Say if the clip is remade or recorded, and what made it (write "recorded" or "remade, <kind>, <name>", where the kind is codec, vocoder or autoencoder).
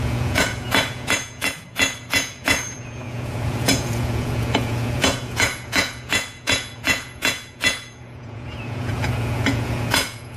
remade, vocoder, Vocos